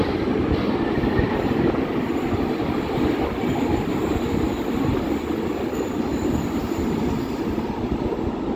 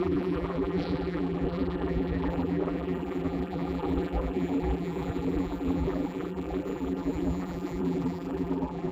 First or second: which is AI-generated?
second